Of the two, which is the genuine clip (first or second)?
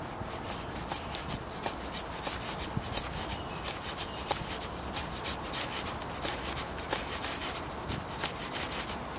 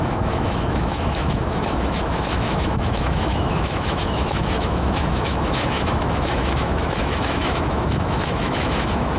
first